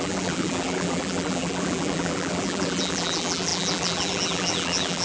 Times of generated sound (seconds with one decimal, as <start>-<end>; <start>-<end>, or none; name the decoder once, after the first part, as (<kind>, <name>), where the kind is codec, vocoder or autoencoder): 0.0-5.0 (vocoder, BigVGAN v2)

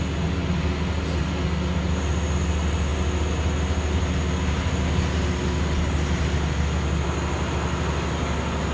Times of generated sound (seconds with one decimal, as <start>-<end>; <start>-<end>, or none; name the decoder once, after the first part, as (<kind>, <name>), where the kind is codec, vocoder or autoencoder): none